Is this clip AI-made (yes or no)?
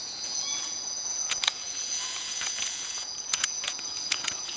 yes